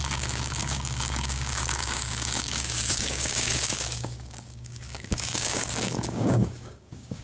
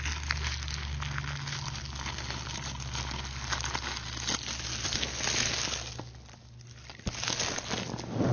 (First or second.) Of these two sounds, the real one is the second